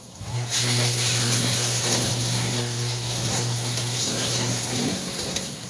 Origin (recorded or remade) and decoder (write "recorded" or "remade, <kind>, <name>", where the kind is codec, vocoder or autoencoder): remade, codec, SNAC